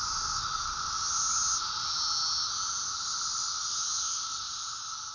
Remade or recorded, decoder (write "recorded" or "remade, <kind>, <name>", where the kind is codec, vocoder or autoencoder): recorded